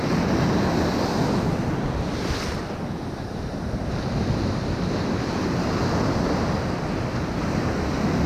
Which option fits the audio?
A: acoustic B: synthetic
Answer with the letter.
A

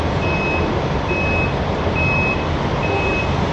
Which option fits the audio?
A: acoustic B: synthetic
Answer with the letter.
A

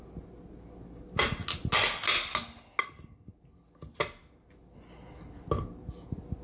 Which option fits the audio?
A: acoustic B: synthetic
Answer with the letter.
A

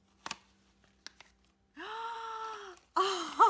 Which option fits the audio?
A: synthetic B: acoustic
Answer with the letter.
B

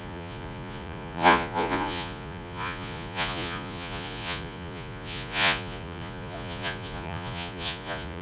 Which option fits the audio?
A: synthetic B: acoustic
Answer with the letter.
A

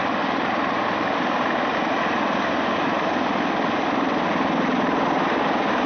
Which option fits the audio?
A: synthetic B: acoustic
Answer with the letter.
B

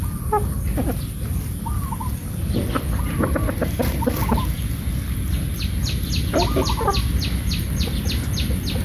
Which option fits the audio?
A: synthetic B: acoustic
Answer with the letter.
B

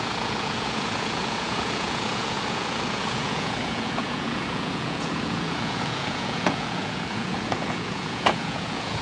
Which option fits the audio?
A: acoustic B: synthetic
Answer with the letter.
B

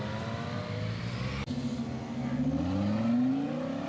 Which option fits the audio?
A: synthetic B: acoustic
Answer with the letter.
B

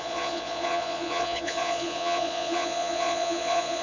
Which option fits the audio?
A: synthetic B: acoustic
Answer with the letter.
A